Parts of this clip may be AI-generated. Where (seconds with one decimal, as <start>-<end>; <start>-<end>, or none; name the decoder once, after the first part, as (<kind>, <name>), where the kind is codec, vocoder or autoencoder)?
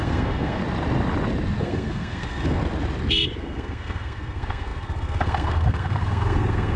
0.0-0.6 (codec, SNAC); 1.6-2.6; 3.4-6.8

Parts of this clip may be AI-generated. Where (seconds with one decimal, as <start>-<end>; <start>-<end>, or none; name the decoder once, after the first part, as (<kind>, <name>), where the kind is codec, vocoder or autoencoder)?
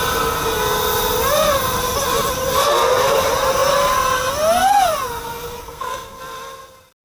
5.6-6.2 (codec, SNAC)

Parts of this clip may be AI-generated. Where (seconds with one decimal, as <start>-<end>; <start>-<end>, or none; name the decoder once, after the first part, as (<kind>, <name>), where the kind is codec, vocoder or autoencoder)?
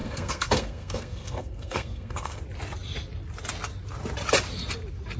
0.0-2.4 (codec, SNAC)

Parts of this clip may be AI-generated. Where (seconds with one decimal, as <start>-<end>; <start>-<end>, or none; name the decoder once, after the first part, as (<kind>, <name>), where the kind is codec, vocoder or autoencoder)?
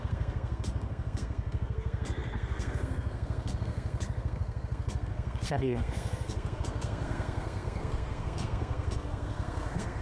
0.0-10.0 (codec, SNAC)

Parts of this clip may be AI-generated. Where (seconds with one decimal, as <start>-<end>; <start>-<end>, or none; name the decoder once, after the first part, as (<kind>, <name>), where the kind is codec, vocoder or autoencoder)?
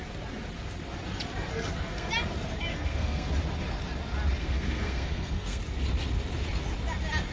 1.5-2.1 (codec, SNAC); 2.7-3.3; 4.4-5.6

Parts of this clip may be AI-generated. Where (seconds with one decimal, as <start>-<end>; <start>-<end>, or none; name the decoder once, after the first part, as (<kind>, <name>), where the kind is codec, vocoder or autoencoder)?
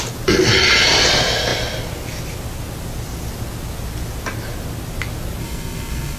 5.4-6.2 (codec, SNAC)